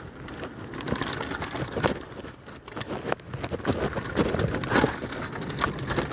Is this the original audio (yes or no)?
yes